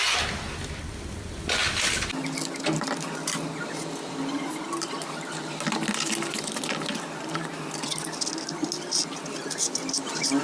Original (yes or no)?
yes